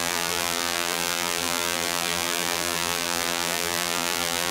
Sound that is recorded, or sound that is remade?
remade